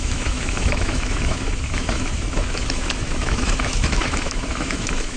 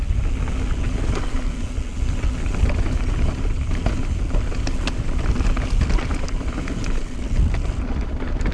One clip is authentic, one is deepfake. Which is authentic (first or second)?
second